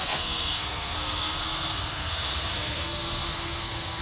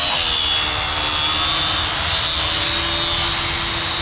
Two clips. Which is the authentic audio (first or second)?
second